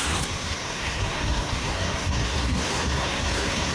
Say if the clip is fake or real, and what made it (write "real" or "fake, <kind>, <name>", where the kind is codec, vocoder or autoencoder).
fake, codec, SNAC